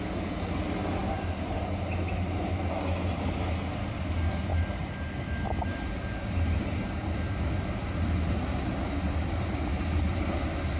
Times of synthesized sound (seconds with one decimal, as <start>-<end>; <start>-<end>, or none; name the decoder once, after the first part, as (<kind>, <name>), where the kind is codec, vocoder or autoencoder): 1.0-1.6 (vocoder, BigVGAN v2); 4.5-7.6